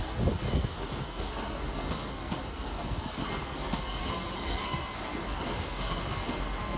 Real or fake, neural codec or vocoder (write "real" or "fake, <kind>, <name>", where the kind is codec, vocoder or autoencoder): fake, codec, SNAC